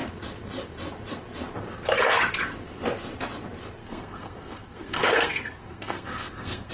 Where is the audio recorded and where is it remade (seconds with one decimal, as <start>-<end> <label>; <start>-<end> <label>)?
0.0-3.8 recorded; 3.8-6.7 remade